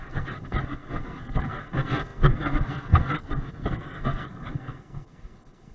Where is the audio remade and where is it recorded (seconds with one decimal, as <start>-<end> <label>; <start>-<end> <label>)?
0.0-5.7 remade